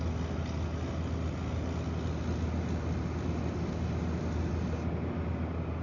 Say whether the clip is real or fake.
real